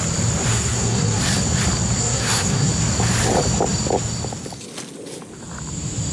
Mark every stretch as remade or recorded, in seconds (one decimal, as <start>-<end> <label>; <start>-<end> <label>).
0.0-0.5 recorded; 0.5-1.2 remade; 1.2-2.0 recorded; 2.0-2.7 remade; 2.7-6.1 recorded